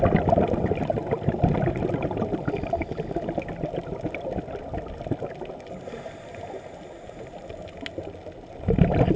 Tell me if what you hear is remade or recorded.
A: recorded